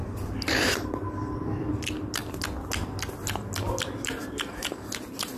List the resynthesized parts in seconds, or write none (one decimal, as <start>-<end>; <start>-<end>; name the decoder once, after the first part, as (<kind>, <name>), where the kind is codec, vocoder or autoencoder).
0.0-2.2 (vocoder, BigVGAN v2); 4.5-5.4